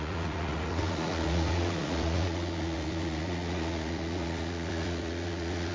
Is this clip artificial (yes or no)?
yes